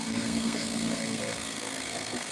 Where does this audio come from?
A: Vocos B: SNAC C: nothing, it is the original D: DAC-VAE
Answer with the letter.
B